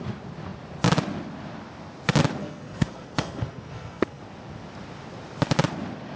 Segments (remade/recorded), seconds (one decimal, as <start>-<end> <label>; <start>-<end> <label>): 0.0-2.4 recorded; 2.4-4.2 remade; 4.2-6.2 recorded